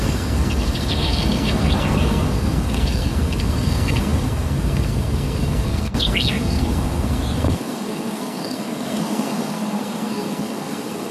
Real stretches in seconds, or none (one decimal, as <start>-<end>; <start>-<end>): none

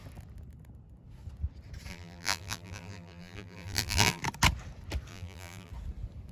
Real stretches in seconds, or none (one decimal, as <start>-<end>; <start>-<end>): 0.0-1.9; 4.2-5.1; 5.7-6.3

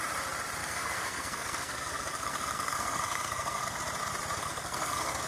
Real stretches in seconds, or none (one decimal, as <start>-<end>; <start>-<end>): 0.0-0.6; 3.8-4.4

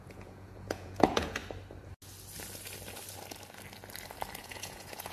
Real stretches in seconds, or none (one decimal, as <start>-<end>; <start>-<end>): 1.4-4.4

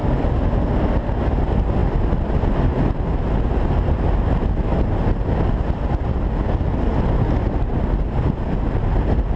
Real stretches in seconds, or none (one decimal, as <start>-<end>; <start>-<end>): 0.0-9.4

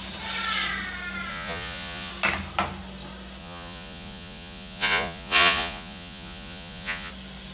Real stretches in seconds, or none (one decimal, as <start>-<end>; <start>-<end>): 0.0-1.3; 2.1-3.4; 7.1-7.5